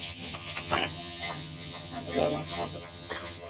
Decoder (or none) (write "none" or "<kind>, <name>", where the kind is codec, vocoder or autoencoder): vocoder, HiFi-GAN